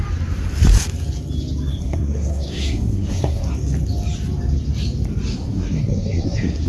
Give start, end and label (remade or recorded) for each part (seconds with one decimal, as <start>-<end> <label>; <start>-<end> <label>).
0.0-1.7 recorded; 1.7-3.5 remade; 3.5-5.3 recorded; 5.3-6.7 remade